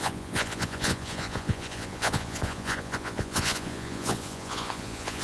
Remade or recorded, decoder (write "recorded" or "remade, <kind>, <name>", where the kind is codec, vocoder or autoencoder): remade, vocoder, Vocos